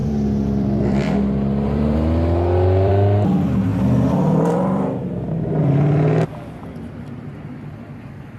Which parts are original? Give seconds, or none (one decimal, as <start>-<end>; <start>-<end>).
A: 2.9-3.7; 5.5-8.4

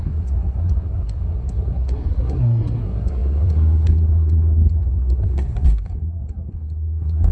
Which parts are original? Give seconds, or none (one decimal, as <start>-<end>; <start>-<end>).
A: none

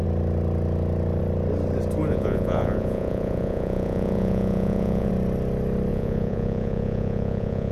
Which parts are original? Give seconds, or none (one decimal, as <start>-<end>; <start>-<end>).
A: 0.0-2.1; 5.1-5.9